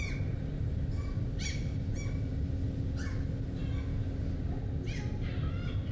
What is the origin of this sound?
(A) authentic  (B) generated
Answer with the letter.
A